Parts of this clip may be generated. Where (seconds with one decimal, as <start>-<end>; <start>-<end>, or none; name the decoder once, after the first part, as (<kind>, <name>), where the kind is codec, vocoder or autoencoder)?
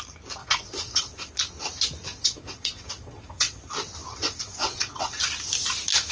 0.4-1.3 (vocoder, WaveNeXt); 2.1-3.6; 4.1-5.2